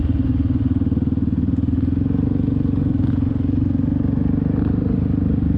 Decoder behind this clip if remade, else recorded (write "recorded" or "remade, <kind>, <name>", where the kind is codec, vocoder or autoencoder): recorded